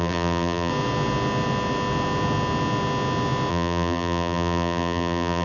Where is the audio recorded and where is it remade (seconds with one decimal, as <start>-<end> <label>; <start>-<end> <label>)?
0.0-0.7 remade; 0.7-3.5 recorded; 3.5-5.4 remade